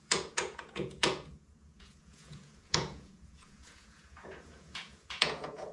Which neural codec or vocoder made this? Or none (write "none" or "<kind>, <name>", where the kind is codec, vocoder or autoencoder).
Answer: vocoder, Vocos